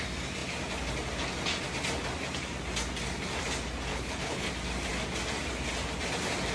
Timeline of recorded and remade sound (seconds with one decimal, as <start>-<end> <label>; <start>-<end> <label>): 0.0-3.9 recorded; 3.9-4.5 remade; 4.5-6.5 recorded